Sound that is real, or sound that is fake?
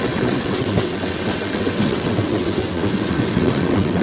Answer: fake